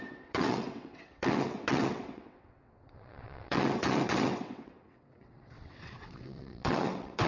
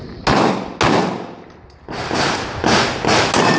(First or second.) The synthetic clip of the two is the first